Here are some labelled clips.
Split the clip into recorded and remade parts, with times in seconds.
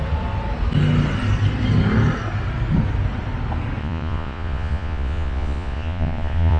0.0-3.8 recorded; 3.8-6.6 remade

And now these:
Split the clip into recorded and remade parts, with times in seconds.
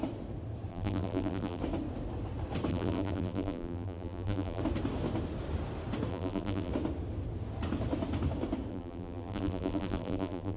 0.0-0.7 recorded; 0.7-1.6 remade; 1.6-2.7 recorded; 2.7-4.6 remade; 4.6-6.1 recorded; 6.1-6.7 remade; 6.7-8.7 recorded; 8.7-10.6 remade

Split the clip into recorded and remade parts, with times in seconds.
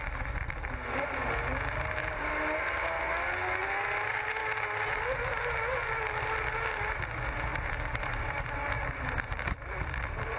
0.0-2.0 recorded; 2.0-3.0 remade; 3.0-7.5 recorded; 7.5-8.4 remade; 8.4-10.4 recorded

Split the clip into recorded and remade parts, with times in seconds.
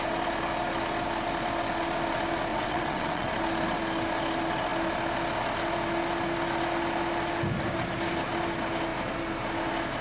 0.0-2.5 recorded; 2.5-3.3 remade; 3.3-10.0 recorded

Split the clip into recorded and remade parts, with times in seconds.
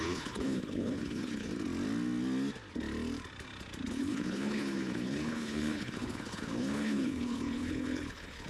0.0-1.5 remade; 1.5-3.9 recorded; 3.9-8.5 remade